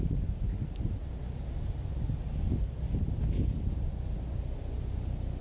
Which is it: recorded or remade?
recorded